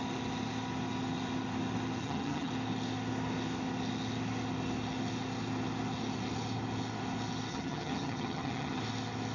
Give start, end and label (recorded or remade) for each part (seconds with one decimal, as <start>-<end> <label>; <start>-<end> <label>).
0.0-2.0 recorded; 2.0-2.5 remade; 2.5-7.5 recorded; 7.5-8.8 remade; 8.8-9.3 recorded

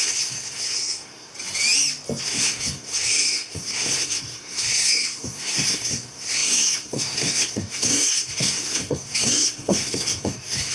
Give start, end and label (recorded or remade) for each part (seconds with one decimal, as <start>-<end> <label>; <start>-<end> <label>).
0.0-1.3 remade; 1.3-2.2 recorded; 2.2-10.7 remade

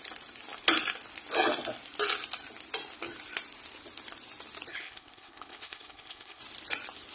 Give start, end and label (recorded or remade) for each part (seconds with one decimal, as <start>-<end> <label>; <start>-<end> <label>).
0.0-4.7 recorded; 4.7-6.4 remade; 6.4-7.1 recorded

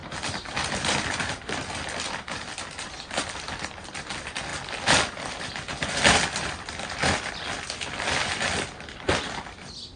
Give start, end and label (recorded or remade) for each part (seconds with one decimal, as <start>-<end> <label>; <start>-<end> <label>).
0.0-10.0 recorded